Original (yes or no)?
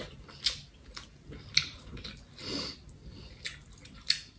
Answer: yes